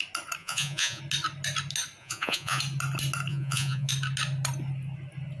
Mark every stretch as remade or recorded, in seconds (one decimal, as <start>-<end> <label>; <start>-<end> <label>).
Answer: 0.0-0.4 recorded; 0.4-1.0 remade; 1.0-2.0 recorded; 2.0-2.6 remade; 2.6-3.3 recorded; 3.3-3.9 remade; 3.9-5.4 recorded